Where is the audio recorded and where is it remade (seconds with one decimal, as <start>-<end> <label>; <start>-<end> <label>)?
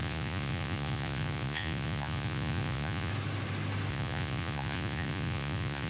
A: 0.0-3.1 remade; 3.1-3.9 recorded; 3.9-5.9 remade